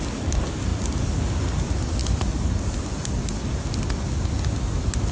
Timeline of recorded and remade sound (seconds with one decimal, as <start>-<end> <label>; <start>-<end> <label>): 0.0-5.1 recorded